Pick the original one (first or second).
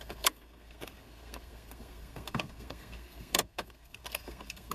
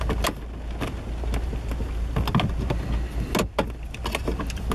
second